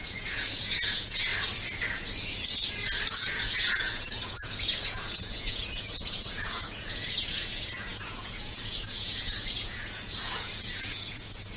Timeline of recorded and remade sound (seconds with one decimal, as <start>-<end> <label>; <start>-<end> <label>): 0.0-1.3 remade; 1.3-3.1 recorded; 3.1-11.6 remade

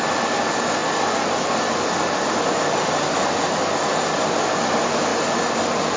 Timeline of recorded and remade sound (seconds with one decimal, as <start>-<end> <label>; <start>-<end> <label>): 0.0-6.0 recorded

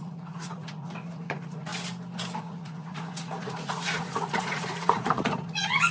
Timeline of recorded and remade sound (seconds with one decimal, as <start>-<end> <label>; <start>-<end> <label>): 0.0-1.7 remade; 1.7-2.4 recorded; 2.4-5.9 remade

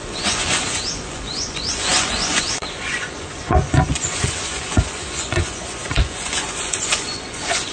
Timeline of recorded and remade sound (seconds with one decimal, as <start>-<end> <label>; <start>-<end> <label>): 0.0-7.7 remade

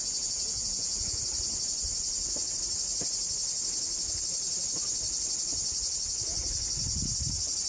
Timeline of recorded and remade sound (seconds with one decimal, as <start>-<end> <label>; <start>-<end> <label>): 0.0-1.2 remade; 1.2-7.7 recorded

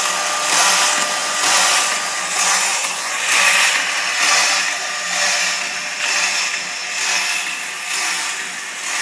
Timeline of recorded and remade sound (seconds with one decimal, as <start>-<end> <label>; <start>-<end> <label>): 0.0-1.2 recorded; 1.2-3.7 remade; 3.7-9.0 recorded

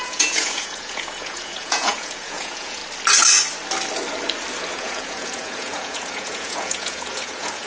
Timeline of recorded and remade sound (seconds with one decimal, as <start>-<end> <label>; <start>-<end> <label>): 0.0-2.8 remade; 2.8-4.7 recorded; 4.7-7.7 remade